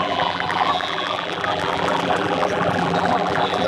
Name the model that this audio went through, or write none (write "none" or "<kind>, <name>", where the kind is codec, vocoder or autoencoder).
vocoder, BigVGAN v2